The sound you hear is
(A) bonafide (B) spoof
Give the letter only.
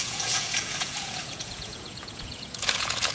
B